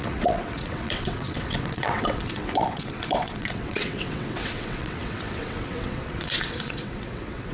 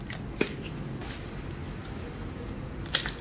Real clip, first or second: second